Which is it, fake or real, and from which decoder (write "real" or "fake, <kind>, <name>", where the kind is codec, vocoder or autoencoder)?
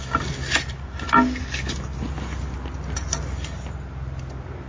real